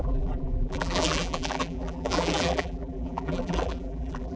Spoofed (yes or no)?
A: yes